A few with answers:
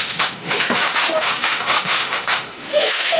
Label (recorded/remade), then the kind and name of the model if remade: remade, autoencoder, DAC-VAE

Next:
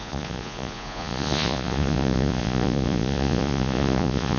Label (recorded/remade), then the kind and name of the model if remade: remade, vocoder, Vocos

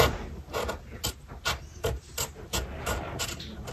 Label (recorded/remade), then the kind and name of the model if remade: recorded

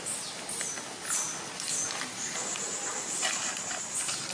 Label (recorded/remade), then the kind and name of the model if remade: recorded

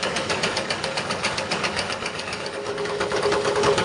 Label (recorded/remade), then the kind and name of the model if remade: remade, codec, DAC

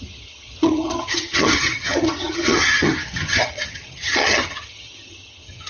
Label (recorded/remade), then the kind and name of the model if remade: remade, vocoder, HiFi-GAN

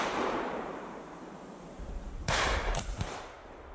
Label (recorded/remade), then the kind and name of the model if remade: remade, vocoder, BigVGAN v2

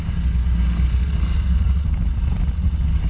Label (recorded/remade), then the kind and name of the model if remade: recorded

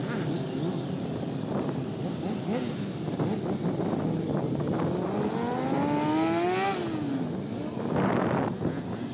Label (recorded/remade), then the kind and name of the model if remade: recorded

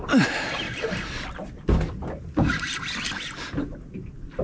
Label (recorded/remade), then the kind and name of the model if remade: recorded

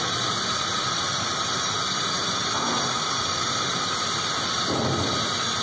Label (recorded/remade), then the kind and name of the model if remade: recorded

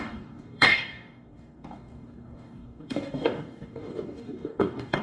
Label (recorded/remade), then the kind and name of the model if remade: remade, codec, DAC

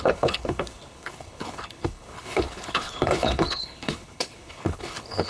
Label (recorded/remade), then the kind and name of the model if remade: remade, codec, HILCodec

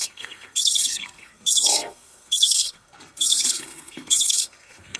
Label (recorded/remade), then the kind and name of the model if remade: remade, codec, SNAC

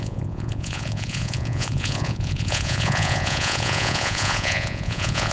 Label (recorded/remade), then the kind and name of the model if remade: remade, vocoder, Vocos